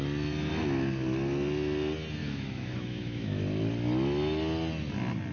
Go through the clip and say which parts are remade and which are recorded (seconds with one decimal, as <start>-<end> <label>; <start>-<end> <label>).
0.0-2.2 recorded; 2.2-3.4 remade; 3.4-5.3 recorded